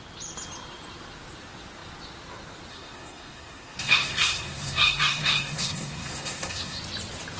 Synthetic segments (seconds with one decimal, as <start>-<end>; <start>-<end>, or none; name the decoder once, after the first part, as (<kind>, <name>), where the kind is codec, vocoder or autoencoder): 2.7-6.8 (codec, SNAC)